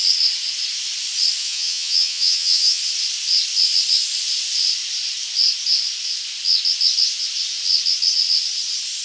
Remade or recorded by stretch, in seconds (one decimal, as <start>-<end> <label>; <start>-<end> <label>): 0.0-1.4 recorded; 1.4-2.8 remade; 2.8-9.0 recorded